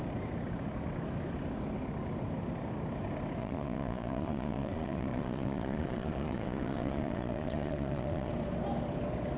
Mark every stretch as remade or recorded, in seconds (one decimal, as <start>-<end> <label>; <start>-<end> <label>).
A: 0.0-3.4 recorded; 3.4-8.3 remade; 8.3-9.4 recorded